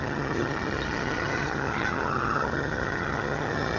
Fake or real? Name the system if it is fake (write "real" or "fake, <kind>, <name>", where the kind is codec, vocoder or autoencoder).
fake, vocoder, HiFi-GAN